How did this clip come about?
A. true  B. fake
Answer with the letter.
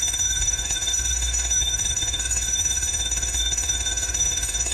B